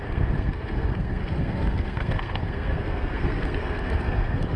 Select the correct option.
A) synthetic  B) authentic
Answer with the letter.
A